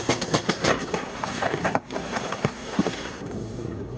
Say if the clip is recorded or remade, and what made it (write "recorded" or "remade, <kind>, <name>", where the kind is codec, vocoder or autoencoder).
remade, codec, SNAC